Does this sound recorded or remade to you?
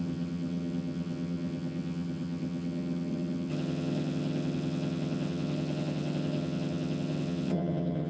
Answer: remade